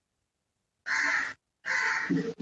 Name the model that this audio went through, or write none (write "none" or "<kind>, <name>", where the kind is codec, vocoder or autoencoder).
none